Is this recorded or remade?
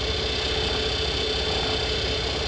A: recorded